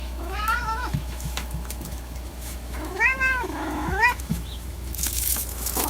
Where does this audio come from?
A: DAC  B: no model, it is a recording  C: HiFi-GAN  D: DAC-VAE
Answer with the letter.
D